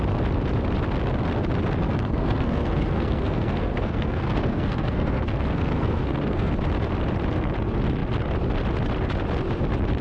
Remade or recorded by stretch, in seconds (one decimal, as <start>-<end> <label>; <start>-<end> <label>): 0.0-1.8 recorded; 1.8-6.5 remade; 6.5-10.0 recorded